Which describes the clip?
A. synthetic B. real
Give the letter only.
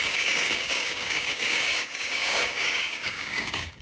A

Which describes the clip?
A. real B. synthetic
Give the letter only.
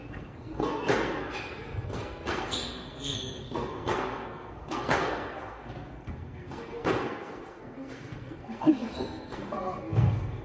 B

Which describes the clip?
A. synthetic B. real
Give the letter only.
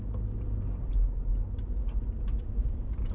B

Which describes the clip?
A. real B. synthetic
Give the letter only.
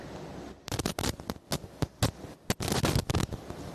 A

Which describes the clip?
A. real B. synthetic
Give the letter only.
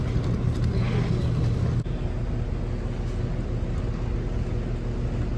A